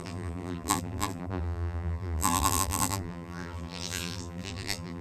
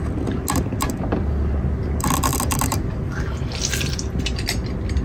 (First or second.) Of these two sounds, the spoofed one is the first